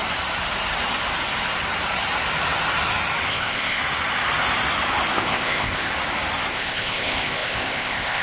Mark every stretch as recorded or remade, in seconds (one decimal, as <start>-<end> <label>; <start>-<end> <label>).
0.0-3.3 recorded; 3.3-3.8 remade; 3.8-5.1 recorded; 5.1-5.9 remade; 5.9-6.5 recorded; 6.5-8.2 remade